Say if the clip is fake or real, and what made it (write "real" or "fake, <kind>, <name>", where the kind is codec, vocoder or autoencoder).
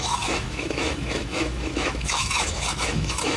fake, autoencoder, DAC-VAE